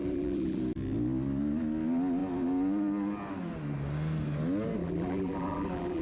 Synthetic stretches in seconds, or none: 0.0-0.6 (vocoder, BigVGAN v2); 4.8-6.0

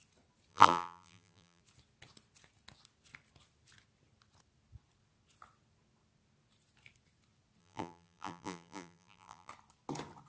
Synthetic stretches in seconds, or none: 0.5-1.6 (vocoder, BigVGAN v2); 7.6-9.5

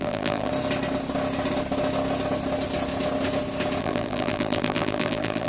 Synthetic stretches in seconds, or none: 0.0-0.5 (vocoder, BigVGAN v2); 3.8-5.5

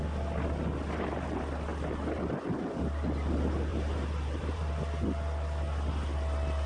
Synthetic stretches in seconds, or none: 3.7-4.7 (vocoder, BigVGAN v2)

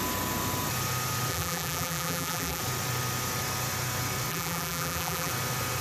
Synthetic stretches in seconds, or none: 1.3-2.6 (vocoder, BigVGAN v2); 4.3-5.3

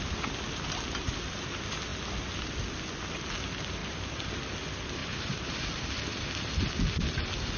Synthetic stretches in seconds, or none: 3.8-4.3 (vocoder, BigVGAN v2); 5.0-5.9